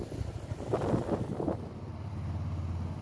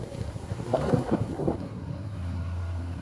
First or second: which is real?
first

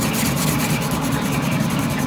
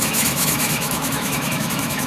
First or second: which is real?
first